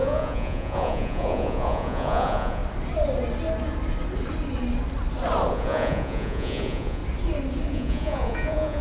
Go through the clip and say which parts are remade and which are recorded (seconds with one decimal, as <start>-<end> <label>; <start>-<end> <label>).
0.0-2.6 remade; 2.6-5.5 recorded; 5.5-7.0 remade; 7.0-7.7 recorded; 7.7-8.8 remade